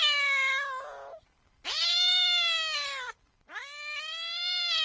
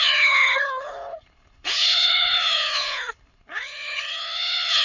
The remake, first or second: second